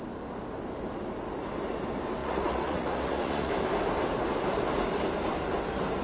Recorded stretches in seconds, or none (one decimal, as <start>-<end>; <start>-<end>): 0.0-2.2; 3.5-6.0